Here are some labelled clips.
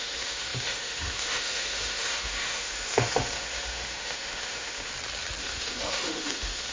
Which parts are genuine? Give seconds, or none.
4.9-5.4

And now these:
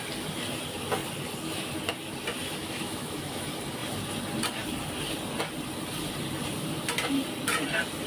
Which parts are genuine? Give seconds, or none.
0.0-2.6; 3.4-8.1

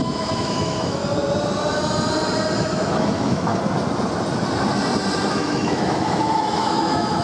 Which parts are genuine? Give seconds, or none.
1.0-2.6; 3.5-5.3

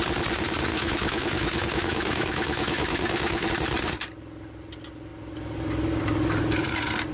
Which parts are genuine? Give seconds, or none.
0.0-0.7; 3.5-7.1

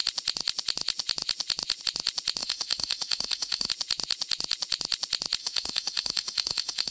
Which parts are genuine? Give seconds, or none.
0.0-2.4; 3.7-5.4

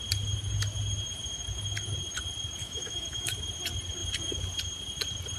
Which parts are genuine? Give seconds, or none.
0.0-2.6; 3.4-5.4

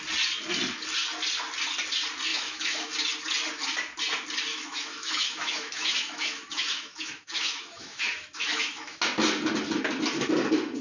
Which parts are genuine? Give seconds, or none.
0.0-2.3; 2.9-4.5; 9.0-10.8